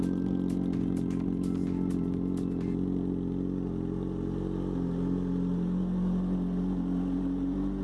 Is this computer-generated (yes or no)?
no